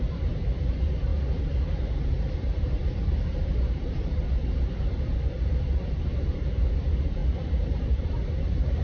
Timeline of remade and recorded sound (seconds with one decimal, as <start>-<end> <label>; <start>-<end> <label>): 0.0-1.1 remade; 1.1-1.9 recorded; 1.9-8.8 remade